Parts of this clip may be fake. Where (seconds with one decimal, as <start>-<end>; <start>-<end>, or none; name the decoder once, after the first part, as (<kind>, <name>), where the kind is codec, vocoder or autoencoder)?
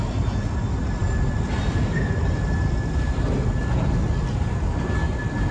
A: none